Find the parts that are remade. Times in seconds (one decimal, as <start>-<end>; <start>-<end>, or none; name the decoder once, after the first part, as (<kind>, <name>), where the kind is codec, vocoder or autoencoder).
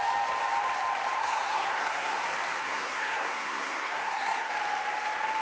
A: 1.2-2.2 (codec, SNAC); 2.6-4.5